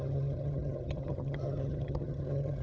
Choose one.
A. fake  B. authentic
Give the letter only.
A